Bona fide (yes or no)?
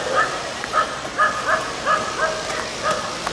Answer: yes